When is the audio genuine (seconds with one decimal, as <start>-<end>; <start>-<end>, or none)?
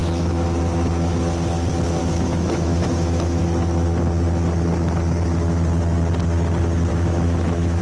0.0-2.0; 3.4-6.9